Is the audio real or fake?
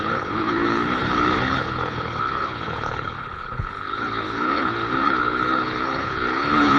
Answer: fake